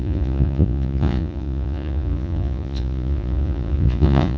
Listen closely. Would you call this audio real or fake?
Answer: fake